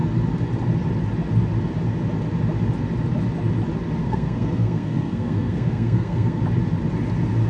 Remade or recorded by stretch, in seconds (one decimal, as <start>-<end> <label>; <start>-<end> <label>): 0.0-4.0 recorded; 4.0-6.4 remade; 6.4-7.5 recorded